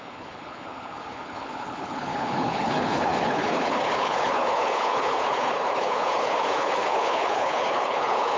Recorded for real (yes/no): no